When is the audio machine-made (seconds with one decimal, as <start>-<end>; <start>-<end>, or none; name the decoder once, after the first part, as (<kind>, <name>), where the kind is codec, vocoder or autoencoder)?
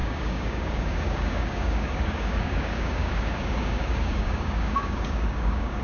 0.0-5.8 (codec, DAC)